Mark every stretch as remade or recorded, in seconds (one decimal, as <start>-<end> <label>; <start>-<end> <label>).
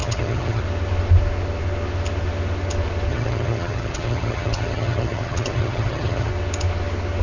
0.0-0.6 remade; 0.6-3.1 recorded; 3.1-6.3 remade; 6.3-7.2 recorded